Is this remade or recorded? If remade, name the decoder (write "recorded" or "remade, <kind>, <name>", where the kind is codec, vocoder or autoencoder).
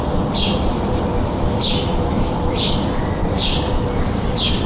remade, vocoder, BigVGAN v2